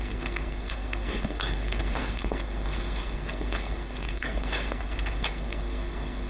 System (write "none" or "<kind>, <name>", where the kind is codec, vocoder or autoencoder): codec, SNAC